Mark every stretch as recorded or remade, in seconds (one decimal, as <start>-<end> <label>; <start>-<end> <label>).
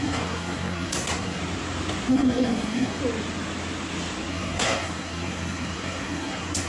0.0-1.4 remade; 1.4-2.1 recorded; 2.1-3.0 remade; 3.0-4.3 recorded; 4.3-6.7 remade